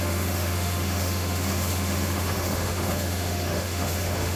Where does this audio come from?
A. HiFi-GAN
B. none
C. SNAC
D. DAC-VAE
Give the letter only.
D